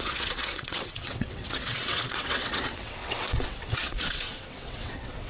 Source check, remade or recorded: remade